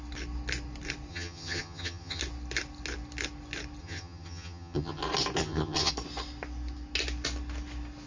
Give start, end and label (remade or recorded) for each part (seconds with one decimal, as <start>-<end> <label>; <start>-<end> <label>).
0.0-1.1 recorded; 1.1-2.2 remade; 2.2-3.8 recorded; 3.8-5.0 remade; 5.0-5.4 recorded; 5.4-5.9 remade; 5.9-8.1 recorded